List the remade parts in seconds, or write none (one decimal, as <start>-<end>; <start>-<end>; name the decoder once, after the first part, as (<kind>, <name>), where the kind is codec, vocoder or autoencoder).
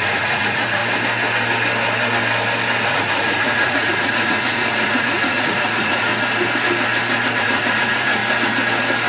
0.0-0.8 (vocoder, Vocos); 2.8-6.1; 7.4-8.2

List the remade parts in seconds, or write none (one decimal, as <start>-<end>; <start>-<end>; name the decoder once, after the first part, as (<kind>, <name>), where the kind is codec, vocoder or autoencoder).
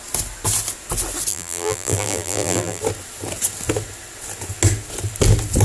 1.3-2.8 (vocoder, BigVGAN v2)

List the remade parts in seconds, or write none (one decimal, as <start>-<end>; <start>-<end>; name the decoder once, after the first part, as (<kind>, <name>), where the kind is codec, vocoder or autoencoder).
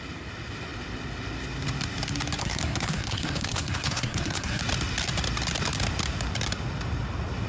2.4-4.6 (codec, SNAC)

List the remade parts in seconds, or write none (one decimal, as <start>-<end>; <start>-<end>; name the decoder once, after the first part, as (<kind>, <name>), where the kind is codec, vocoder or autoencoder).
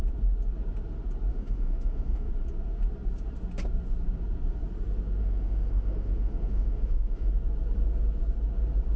1.3-2.3 (autoencoder, DAC-VAE); 5.2-7.3